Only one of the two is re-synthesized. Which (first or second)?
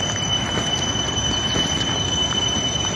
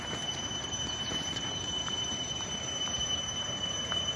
second